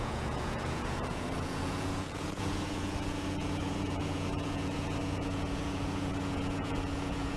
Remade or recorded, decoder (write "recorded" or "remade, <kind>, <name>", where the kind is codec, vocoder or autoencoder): remade, vocoder, Vocos